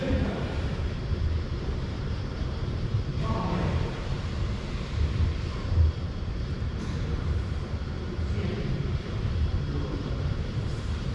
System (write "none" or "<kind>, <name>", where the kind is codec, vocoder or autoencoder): vocoder, BigVGAN v2